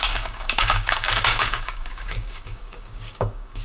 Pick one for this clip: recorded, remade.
remade